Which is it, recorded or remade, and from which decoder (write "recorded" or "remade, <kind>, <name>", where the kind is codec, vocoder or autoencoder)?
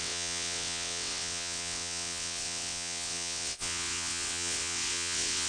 remade, vocoder, WaveNeXt